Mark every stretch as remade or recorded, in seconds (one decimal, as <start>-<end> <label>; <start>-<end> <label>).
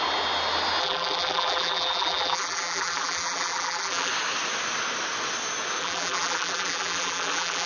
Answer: 0.0-0.8 recorded; 0.8-4.1 remade; 4.1-5.8 recorded; 5.8-7.7 remade